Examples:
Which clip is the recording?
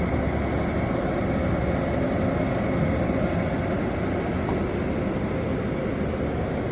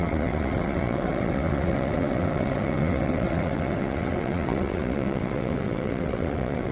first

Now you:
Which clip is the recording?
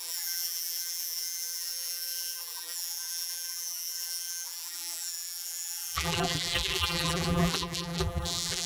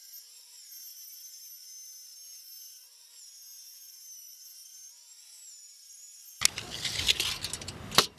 second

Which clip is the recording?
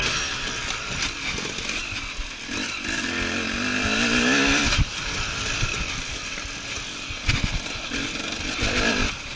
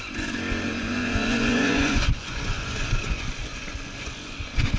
first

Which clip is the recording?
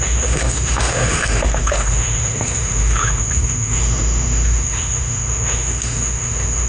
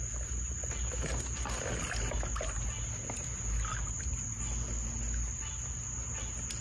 second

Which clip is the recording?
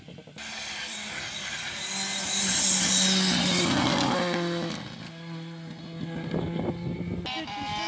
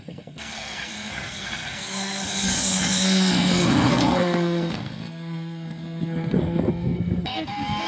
first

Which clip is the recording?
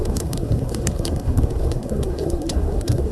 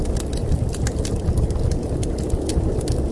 second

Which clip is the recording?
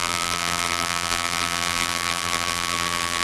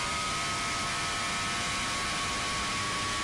second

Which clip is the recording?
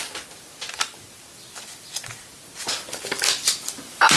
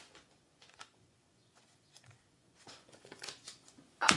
first